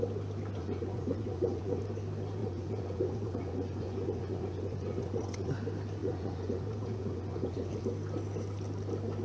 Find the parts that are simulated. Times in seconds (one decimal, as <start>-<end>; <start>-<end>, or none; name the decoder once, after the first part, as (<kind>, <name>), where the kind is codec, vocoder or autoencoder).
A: 0.6-1.8 (vocoder, Vocos); 2.4-5.5; 6.0-7.8